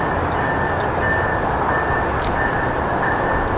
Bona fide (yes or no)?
yes